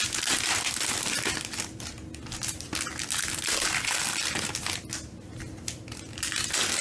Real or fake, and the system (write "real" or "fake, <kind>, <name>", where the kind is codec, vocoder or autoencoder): real